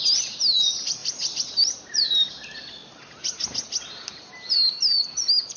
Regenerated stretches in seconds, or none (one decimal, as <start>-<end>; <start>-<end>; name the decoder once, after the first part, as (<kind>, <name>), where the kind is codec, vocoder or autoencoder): 1.0-2.3 (vocoder, BigVGAN v2)